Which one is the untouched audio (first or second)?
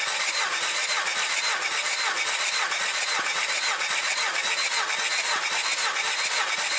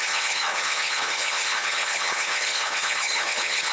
first